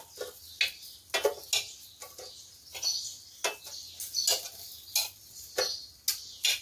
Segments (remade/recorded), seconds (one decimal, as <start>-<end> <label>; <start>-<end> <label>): 0.0-6.6 recorded